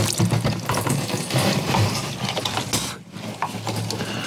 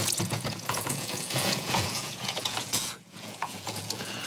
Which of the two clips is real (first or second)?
first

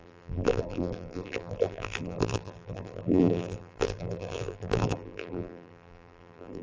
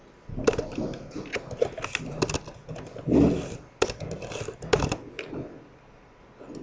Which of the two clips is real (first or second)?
second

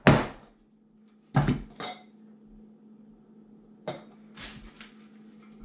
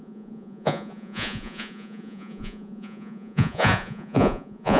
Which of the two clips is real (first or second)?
first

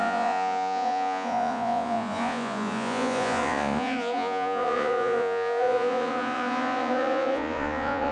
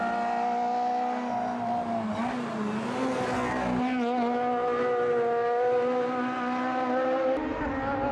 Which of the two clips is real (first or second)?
second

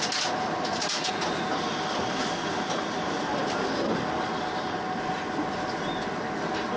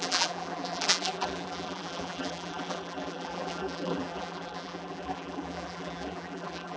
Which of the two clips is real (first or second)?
first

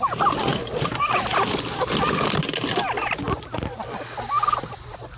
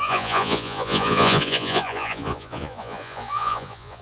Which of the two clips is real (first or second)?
first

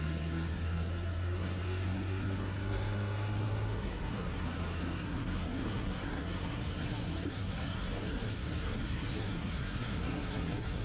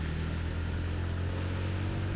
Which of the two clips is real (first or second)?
second